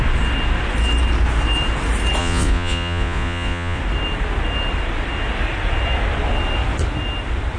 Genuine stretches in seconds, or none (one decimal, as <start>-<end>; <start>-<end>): 0.0-2.2; 3.8-7.6